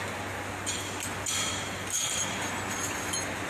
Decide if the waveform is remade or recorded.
recorded